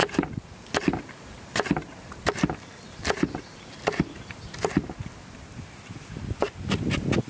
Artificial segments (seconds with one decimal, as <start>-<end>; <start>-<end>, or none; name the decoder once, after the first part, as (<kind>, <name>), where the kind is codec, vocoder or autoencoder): none